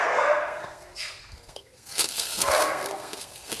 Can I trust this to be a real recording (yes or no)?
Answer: no